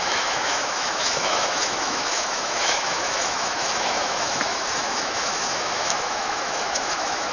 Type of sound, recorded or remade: remade